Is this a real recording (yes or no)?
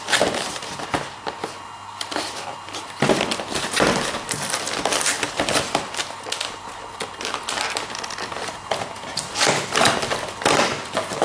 yes